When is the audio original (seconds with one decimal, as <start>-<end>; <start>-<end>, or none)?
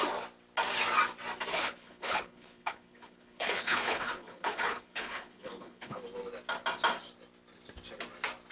0.0-1.5; 6.0-8.5